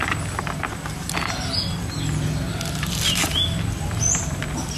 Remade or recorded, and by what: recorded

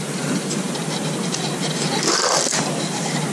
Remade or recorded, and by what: recorded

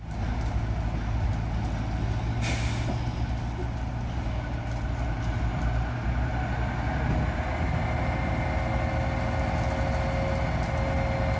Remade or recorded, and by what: recorded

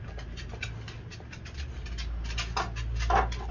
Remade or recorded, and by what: recorded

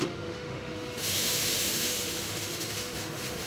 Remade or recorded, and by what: remade, autoencoder, DAC-VAE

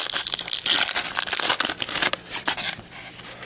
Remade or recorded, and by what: recorded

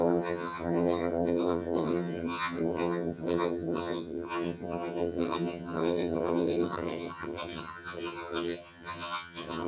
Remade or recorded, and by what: remade, vocoder, HiFi-GAN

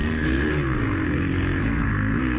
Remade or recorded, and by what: remade, codec, SNAC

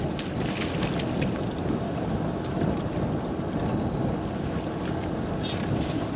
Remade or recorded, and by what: recorded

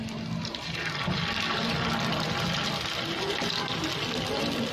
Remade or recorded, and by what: remade, vocoder, BigVGAN v2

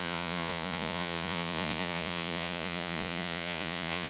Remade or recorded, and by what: remade, vocoder, Vocos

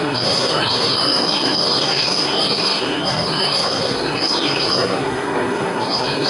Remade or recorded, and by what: remade, codec, SNAC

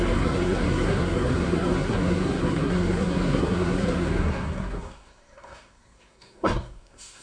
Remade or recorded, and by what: remade, codec, SNAC